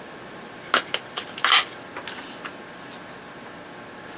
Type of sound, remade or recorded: recorded